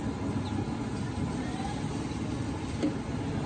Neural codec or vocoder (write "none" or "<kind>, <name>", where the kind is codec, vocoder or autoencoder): none